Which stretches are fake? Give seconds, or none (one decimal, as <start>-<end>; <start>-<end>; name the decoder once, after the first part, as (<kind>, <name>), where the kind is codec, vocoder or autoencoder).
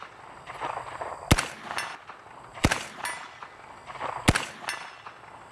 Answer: 2.5-4.0 (vocoder, BigVGAN v2)